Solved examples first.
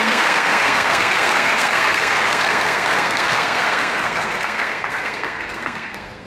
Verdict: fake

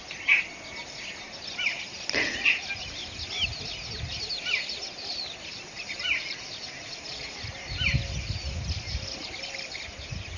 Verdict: real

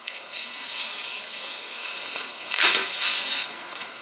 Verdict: fake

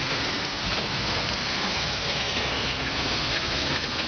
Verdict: fake